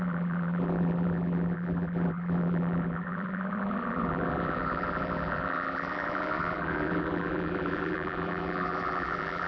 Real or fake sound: fake